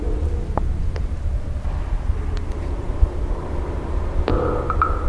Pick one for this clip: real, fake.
real